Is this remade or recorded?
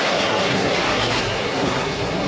remade